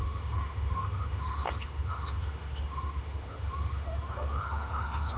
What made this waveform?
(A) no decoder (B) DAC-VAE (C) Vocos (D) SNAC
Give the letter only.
B